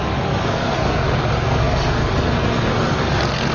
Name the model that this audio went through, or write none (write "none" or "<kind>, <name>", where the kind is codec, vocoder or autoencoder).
codec, SNAC